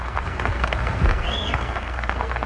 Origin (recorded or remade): remade